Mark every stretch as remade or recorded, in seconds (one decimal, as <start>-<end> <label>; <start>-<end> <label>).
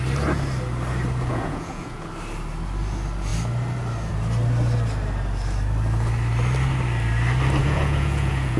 0.0-1.3 recorded; 1.3-2.1 remade; 2.1-7.6 recorded; 7.6-8.6 remade